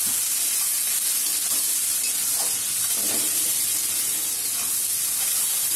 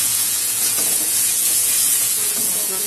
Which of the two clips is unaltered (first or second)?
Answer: first